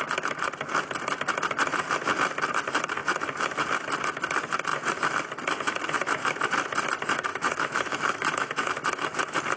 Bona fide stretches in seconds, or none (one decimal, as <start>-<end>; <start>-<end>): 0.0-7.3; 8.7-9.6